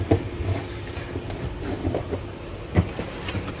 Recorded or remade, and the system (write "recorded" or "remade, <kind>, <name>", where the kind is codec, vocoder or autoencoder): remade, vocoder, BigVGAN v2